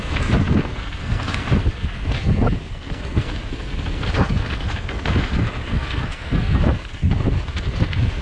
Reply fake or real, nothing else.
fake